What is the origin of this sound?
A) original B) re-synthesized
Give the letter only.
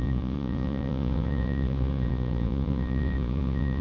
B